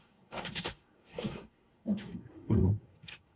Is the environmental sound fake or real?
fake